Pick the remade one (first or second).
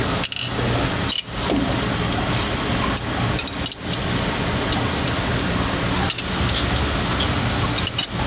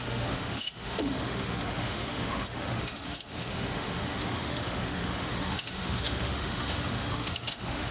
second